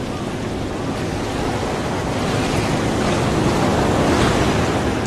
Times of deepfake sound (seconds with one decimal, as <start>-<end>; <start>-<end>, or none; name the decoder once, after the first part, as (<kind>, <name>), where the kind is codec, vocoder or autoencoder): 1.6-2.3 (vocoder, BigVGAN v2)